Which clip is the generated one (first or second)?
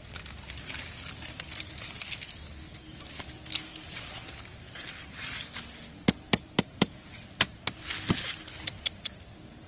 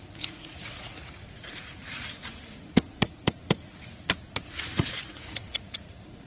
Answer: second